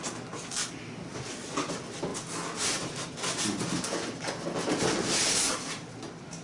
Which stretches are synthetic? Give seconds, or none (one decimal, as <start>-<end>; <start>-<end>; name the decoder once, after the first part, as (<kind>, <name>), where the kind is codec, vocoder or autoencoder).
none